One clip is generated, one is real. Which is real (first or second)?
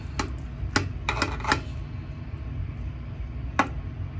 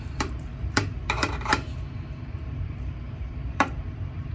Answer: first